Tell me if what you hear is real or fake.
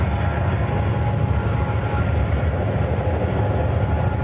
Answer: real